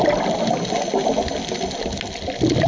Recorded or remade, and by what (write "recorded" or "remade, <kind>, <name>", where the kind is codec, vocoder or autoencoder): recorded